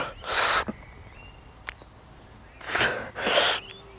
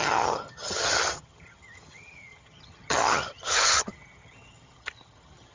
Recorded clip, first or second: first